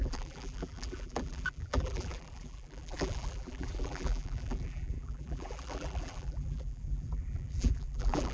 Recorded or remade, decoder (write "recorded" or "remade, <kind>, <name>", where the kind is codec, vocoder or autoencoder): remade, vocoder, BigVGAN v2